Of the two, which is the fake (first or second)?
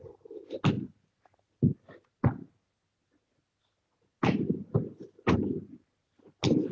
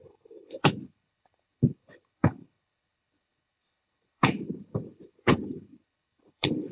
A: second